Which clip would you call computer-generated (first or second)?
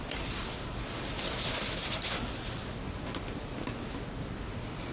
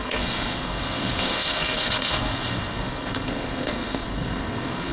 second